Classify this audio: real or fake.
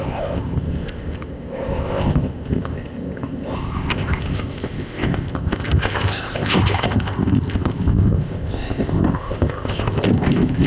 fake